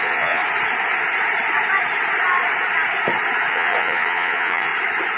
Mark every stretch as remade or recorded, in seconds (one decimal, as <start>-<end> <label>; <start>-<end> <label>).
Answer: 0.0-0.4 remade; 0.4-3.5 recorded; 3.5-4.7 remade; 4.7-5.2 recorded